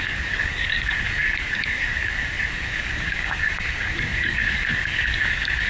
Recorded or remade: remade